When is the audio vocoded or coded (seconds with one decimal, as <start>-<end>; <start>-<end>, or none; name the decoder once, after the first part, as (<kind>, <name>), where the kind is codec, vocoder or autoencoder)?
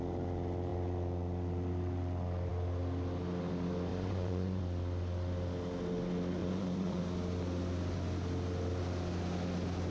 3.9-4.6 (vocoder, Vocos); 6.4-7.0